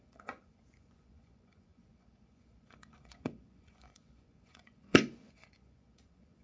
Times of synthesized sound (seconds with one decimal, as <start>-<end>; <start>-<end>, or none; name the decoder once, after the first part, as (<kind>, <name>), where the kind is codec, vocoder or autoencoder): 0.0-6.4 (vocoder, Vocos)